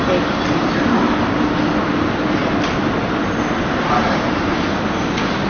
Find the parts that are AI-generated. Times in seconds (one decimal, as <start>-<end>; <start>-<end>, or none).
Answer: none